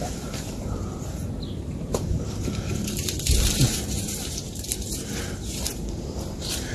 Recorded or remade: remade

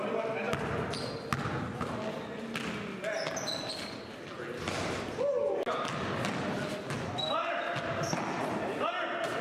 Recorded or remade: recorded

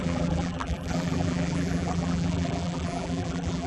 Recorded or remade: remade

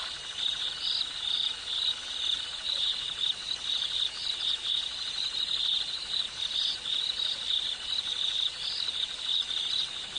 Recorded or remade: remade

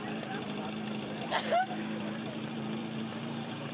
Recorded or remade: remade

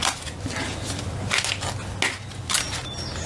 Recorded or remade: recorded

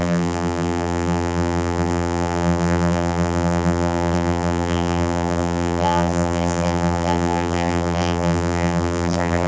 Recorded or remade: remade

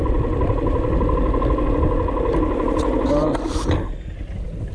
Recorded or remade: recorded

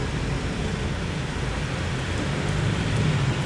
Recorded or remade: remade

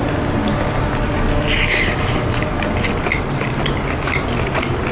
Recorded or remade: recorded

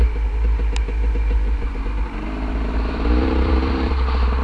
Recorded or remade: remade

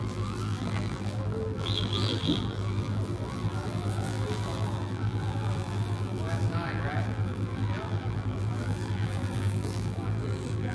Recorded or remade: remade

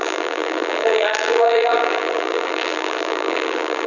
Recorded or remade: remade